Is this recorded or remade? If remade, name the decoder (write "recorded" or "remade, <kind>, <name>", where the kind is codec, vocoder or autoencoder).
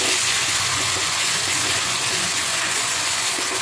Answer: remade, vocoder, Vocos